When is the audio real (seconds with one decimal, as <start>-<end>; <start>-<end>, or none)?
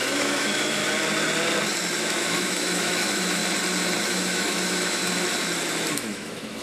0.8-2.0; 3.4-4.1; 5.0-5.9